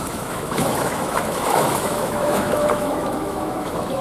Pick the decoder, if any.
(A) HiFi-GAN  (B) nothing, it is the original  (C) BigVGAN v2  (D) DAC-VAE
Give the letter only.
D